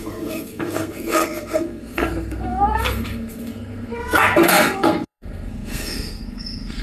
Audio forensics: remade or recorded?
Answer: remade